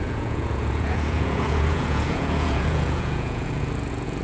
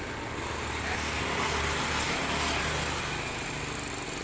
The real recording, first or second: second